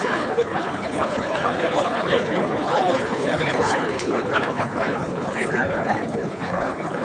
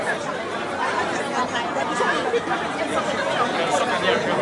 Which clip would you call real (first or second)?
second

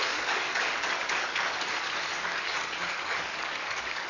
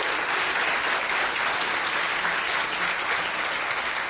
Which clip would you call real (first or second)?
second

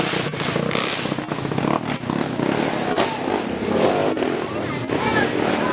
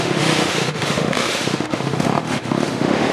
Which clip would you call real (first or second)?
first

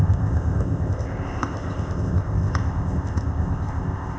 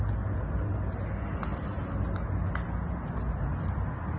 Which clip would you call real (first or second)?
second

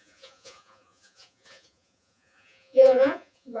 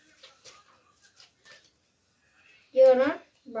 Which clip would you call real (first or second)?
second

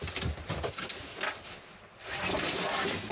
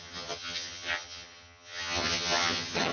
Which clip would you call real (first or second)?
first